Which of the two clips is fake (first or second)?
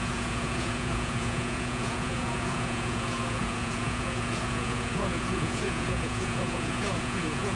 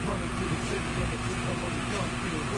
first